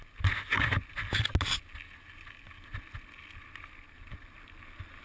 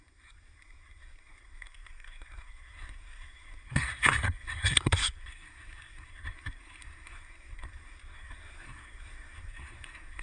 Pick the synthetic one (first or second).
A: second